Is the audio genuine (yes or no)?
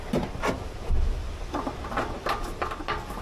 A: yes